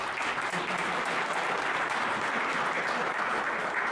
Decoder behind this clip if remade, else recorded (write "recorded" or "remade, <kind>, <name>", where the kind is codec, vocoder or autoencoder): recorded